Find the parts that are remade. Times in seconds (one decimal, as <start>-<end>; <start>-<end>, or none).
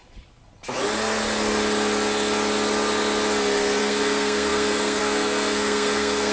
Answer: 3.8-6.3